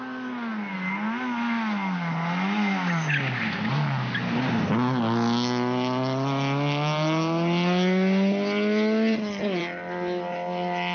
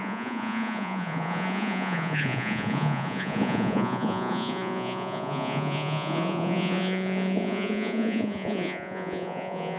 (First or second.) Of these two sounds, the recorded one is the first